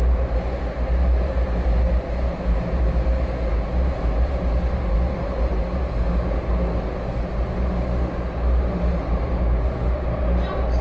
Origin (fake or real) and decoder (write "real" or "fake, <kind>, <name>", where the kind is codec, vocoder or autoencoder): real